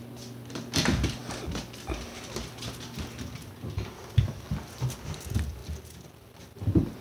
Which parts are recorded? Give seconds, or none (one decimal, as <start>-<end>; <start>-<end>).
0.0-5.6; 6.1-7.0